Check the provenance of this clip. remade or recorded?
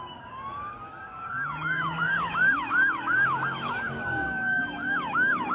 remade